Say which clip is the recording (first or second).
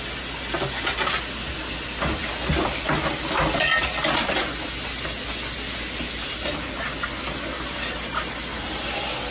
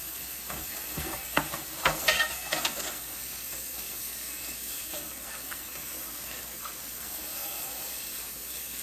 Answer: first